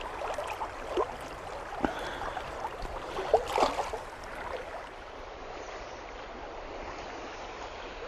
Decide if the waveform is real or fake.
real